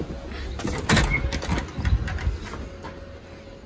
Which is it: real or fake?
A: real